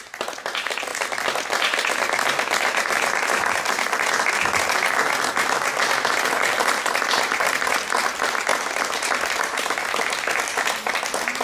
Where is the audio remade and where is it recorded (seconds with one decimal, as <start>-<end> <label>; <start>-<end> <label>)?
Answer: 0.0-11.4 recorded